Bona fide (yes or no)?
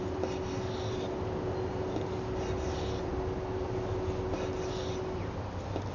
yes